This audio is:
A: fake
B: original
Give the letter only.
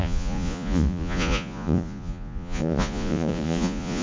A